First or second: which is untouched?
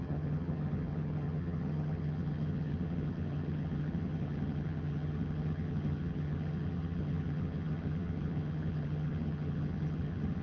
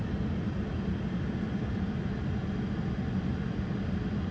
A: second